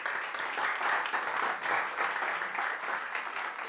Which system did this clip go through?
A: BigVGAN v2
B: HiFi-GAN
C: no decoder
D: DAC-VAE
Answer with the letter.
C